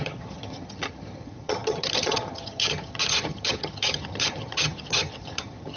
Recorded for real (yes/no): no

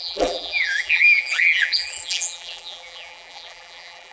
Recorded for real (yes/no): no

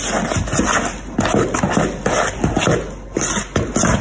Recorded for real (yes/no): yes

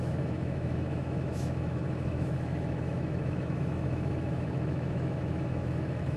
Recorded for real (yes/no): no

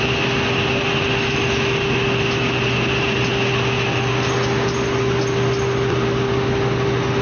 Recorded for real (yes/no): yes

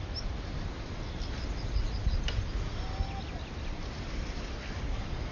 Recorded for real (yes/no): yes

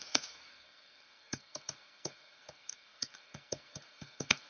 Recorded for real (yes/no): no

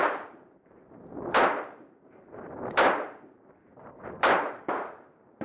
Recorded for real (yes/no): no